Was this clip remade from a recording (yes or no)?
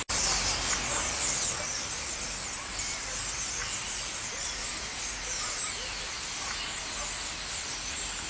no